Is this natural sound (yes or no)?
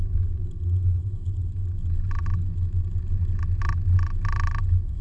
yes